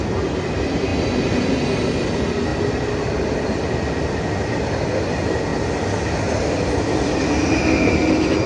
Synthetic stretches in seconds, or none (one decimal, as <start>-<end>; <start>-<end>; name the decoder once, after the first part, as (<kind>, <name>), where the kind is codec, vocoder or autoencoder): none